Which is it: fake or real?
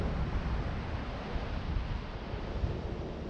real